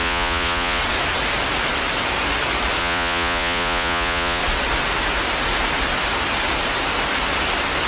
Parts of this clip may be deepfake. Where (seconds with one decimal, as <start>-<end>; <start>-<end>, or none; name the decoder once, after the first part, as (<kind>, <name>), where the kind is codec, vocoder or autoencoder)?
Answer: 0.0-0.8 (vocoder, Vocos); 2.8-4.4